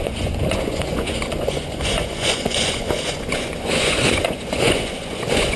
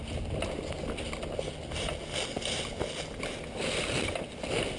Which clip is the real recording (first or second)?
second